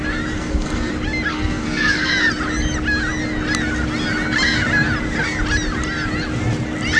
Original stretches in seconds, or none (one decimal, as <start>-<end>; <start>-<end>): 0.0-0.4; 0.9-1.3; 2.1-7.0